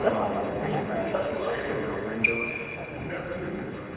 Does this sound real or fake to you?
fake